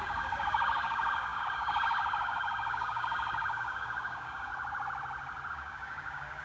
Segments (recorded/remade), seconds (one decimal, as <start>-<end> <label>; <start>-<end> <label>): 0.0-4.5 remade; 4.5-5.5 recorded; 5.5-6.4 remade